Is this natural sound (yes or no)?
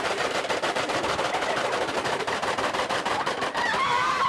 no